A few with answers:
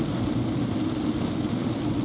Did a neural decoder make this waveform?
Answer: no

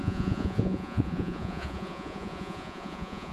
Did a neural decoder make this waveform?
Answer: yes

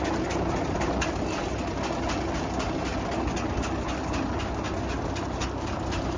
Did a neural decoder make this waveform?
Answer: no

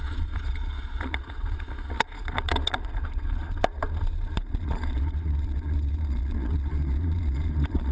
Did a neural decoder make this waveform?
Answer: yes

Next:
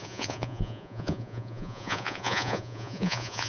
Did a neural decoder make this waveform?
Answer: yes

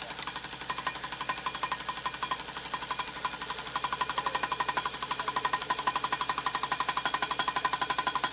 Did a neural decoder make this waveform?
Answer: no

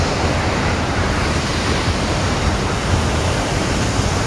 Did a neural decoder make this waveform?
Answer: yes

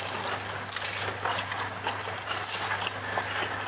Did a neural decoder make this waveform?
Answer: no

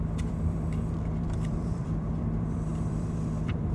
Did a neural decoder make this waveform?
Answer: yes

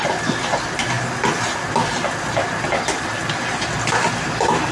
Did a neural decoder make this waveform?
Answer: no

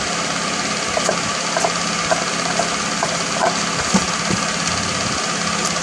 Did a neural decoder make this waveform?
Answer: no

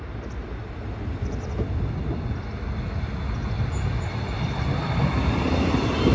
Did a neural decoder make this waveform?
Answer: no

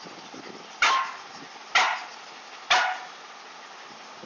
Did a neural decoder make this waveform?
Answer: no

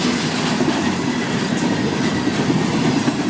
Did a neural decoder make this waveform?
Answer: no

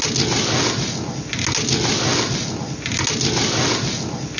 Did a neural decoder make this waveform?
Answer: no